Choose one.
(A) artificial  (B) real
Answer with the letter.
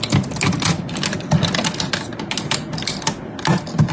B